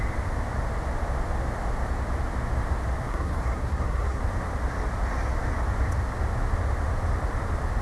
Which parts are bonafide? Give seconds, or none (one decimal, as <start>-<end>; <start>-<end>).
0.0-3.0; 4.2-7.8